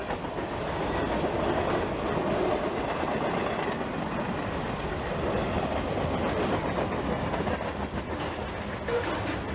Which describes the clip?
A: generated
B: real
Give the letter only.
B